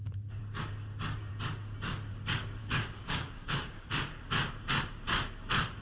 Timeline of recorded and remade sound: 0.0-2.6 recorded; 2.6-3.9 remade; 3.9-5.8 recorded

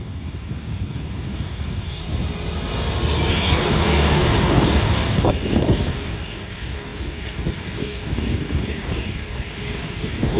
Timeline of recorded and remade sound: 0.0-2.0 remade; 2.0-3.3 recorded; 3.3-10.4 remade

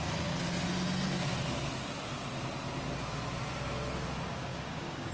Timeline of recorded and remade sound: 0.0-4.5 recorded; 4.5-5.1 remade

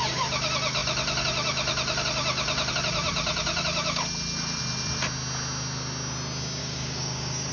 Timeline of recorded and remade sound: 0.0-6.6 recorded; 6.6-7.5 remade

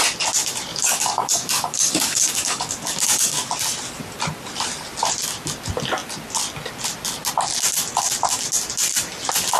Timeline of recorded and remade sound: 0.0-0.7 recorded; 0.7-3.5 remade; 3.5-9.6 recorded

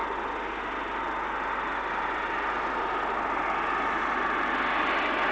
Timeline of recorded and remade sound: 0.0-5.3 recorded

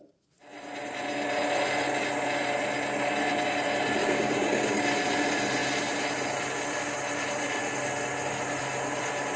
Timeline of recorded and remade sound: 0.0-4.0 recorded; 4.0-4.8 remade; 4.8-9.4 recorded

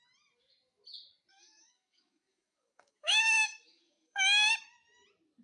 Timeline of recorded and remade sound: 0.0-1.3 recorded; 1.3-4.5 remade; 4.5-5.4 recorded